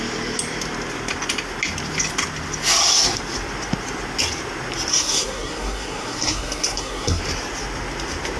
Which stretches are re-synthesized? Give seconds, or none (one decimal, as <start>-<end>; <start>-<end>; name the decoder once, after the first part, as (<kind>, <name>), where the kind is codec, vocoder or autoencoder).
4.9-7.2 (codec, SNAC)